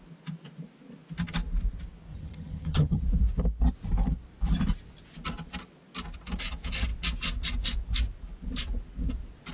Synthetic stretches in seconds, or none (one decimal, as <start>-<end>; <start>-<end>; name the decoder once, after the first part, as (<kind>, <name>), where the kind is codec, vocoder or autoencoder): 2.1-3.0 (vocoder, HiFi-GAN)